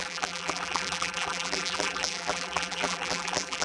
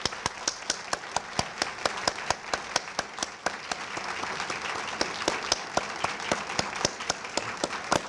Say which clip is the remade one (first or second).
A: first